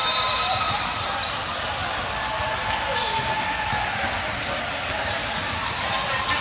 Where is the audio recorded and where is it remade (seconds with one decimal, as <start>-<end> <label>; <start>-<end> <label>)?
0.0-6.4 recorded